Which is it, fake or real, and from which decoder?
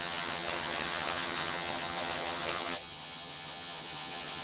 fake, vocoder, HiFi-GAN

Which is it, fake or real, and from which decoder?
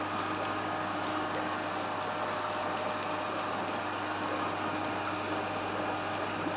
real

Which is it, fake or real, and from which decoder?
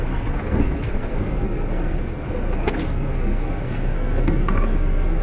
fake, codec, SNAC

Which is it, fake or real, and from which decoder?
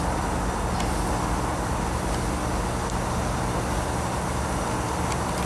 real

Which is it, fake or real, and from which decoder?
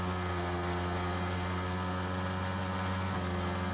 real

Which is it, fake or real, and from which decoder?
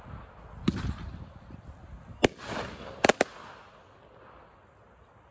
real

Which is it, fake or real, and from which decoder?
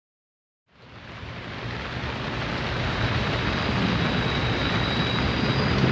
real